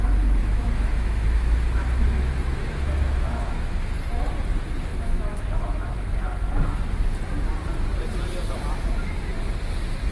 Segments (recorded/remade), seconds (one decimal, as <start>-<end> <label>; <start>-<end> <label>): 0.0-0.4 recorded; 0.4-4.2 remade; 4.2-4.9 recorded; 4.9-6.1 remade; 6.1-10.1 recorded